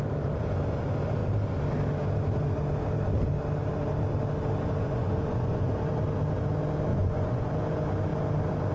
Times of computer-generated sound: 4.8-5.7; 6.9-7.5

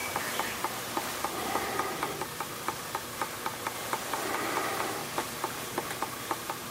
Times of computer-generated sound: 0.0-5.0; 6.3-6.7

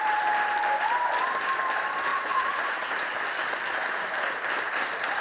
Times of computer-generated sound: 2.1-3.1

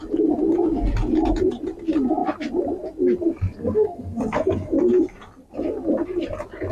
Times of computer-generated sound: 3.6-4.2

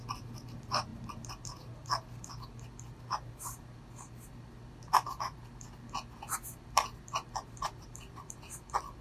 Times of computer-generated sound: none